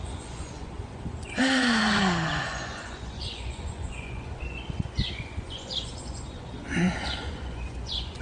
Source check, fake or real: fake